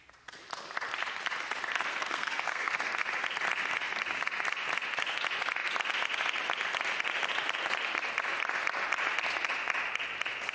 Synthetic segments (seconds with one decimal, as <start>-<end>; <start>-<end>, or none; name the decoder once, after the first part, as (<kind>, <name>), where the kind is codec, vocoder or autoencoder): 1.9-2.7 (codec, SNAC)